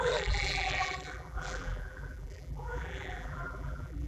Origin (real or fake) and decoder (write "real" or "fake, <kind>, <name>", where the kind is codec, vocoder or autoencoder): fake, vocoder, BigVGAN v2